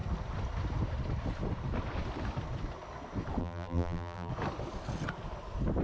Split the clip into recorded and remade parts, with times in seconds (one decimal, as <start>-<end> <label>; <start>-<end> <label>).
0.0-3.4 recorded; 3.4-4.3 remade; 4.3-5.8 recorded